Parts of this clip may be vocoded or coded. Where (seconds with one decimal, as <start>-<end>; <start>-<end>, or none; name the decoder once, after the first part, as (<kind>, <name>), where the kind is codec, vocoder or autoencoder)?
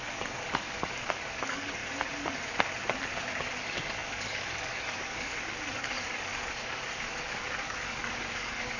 0.0-1.8 (codec, DAC); 3.6-8.8